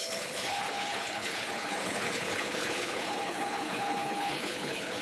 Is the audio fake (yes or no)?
yes